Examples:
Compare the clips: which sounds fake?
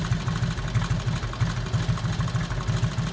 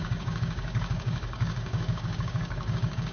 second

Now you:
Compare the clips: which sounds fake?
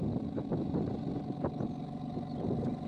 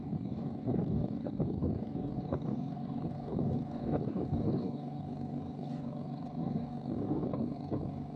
second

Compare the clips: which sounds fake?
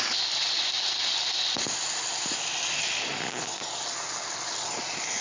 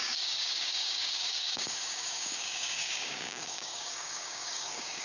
second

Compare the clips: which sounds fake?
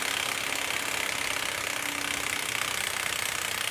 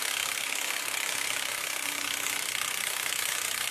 second